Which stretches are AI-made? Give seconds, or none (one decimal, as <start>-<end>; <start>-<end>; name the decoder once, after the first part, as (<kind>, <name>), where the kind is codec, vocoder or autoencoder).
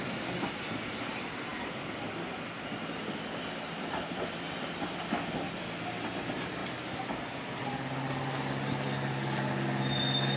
none